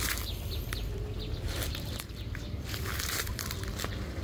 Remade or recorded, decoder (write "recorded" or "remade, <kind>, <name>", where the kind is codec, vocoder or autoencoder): recorded